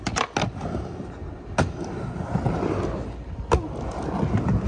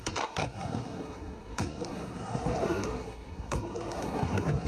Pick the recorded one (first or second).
first